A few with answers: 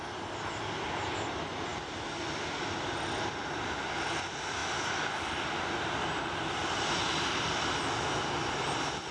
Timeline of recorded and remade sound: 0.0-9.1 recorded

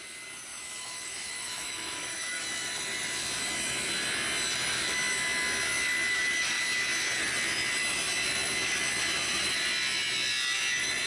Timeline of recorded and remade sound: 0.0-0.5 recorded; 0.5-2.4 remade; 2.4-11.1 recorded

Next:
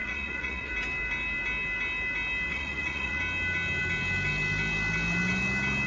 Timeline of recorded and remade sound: 0.0-0.7 remade; 0.7-2.5 recorded; 2.5-3.2 remade; 3.2-5.9 recorded

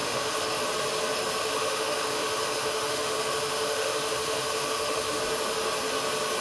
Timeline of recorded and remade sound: 0.0-0.6 remade; 0.6-1.4 recorded; 1.4-5.2 remade; 5.2-6.4 recorded